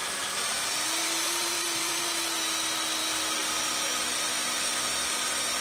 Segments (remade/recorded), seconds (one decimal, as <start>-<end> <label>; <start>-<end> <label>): 0.0-2.2 remade; 2.2-5.6 recorded